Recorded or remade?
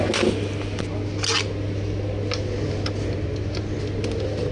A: recorded